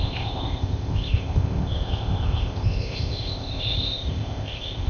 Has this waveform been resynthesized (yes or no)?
yes